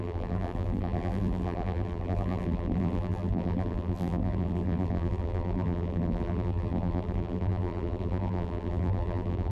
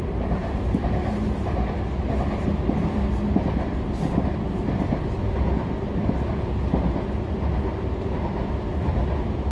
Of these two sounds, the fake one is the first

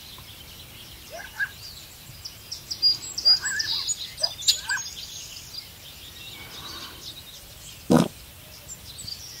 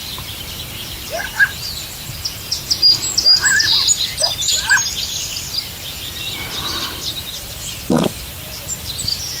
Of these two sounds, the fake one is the second